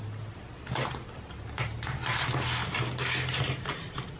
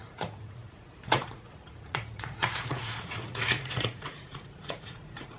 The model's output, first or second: second